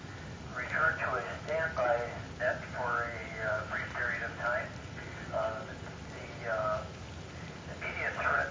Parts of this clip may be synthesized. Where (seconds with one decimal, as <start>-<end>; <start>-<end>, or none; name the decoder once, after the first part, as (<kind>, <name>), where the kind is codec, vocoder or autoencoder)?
none